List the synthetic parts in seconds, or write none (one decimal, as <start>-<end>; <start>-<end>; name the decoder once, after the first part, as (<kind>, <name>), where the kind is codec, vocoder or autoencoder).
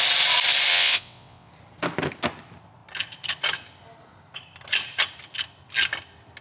0.7-1.5 (vocoder, WaveNeXt)